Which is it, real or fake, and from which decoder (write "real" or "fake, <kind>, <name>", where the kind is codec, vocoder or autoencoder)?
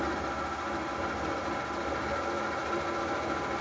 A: real